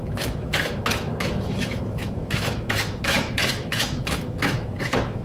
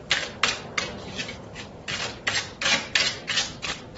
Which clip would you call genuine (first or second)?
second